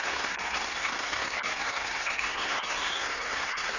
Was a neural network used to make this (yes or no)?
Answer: yes